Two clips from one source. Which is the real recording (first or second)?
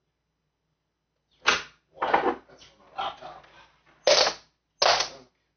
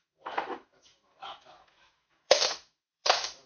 first